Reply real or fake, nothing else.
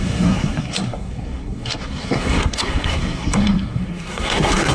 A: fake